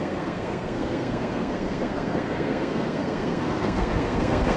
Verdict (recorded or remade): remade